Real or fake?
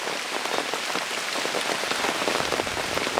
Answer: real